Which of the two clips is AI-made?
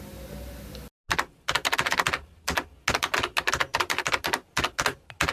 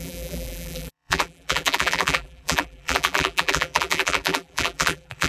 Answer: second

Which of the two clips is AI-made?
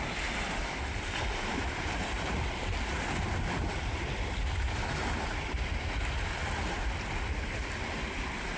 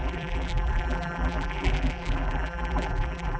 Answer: second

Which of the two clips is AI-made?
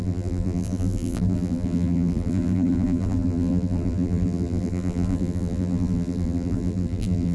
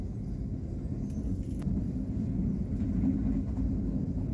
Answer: first